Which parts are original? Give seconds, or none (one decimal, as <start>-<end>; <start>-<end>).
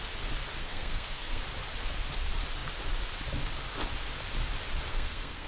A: 0.0-0.6; 1.4-4.9